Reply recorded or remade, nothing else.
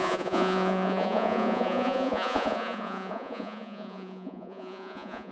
remade